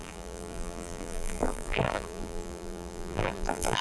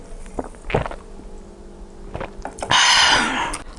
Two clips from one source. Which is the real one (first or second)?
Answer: second